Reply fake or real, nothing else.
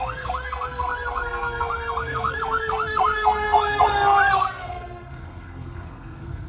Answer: fake